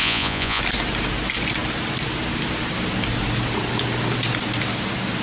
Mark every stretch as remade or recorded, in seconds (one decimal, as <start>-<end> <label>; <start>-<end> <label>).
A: 0.0-0.6 remade; 0.6-5.2 recorded